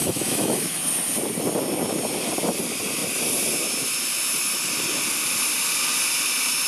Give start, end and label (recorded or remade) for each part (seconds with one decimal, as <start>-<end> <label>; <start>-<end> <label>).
0.0-0.8 remade; 0.8-6.7 recorded